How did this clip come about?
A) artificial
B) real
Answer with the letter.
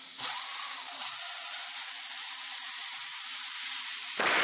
A